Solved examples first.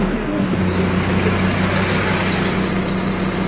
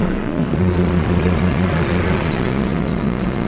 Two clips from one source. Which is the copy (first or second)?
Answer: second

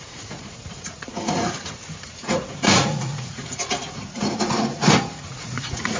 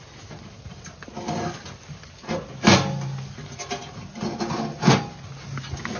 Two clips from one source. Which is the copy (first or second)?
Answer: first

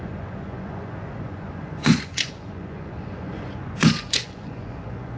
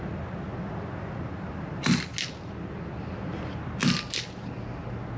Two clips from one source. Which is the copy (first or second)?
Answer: first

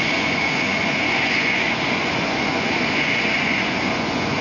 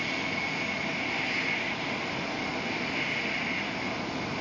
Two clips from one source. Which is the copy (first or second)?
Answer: first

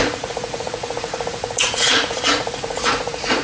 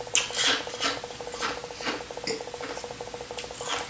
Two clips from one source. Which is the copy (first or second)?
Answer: first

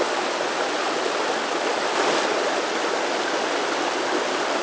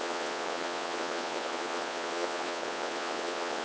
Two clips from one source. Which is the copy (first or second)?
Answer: second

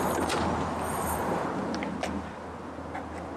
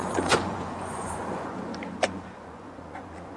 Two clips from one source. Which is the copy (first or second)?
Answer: second